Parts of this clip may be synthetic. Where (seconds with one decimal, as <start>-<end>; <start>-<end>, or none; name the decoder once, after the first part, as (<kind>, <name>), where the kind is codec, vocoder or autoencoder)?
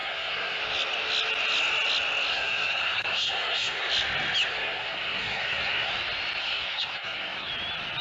0.0-0.6 (codec, SNAC); 2.3-3.9; 4.5-5.9; 6.4-7.5